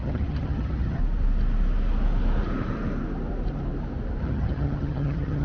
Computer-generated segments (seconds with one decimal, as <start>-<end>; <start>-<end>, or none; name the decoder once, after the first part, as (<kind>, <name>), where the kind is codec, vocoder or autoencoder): 0.0-1.0 (vocoder, HiFi-GAN); 4.2-5.4